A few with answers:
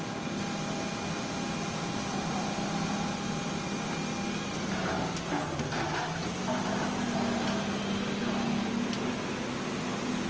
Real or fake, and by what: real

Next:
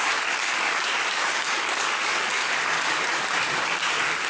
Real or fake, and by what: fake, codec, DAC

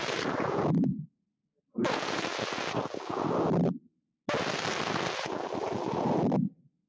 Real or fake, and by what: real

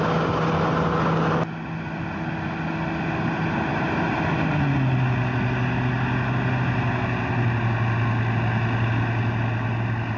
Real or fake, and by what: real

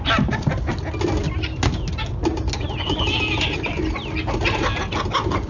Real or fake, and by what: real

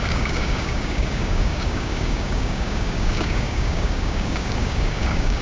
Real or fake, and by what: fake, codec, DAC